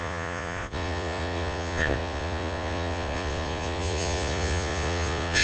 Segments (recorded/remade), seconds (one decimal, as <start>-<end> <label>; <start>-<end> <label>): 0.0-5.4 remade